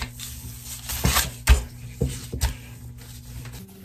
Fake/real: real